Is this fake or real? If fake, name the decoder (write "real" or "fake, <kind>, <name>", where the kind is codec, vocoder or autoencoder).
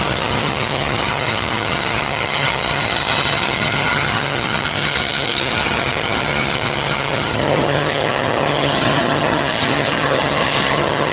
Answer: fake, vocoder, HiFi-GAN